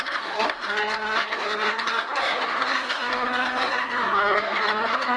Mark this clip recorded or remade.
remade